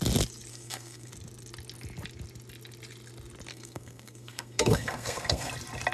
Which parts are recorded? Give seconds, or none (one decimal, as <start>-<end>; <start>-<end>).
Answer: 0.0-0.5; 1.1-3.5; 5.5-5.9